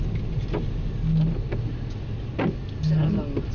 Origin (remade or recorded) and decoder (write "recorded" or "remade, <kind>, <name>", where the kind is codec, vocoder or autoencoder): recorded